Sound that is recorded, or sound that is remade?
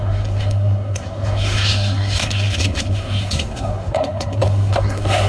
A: remade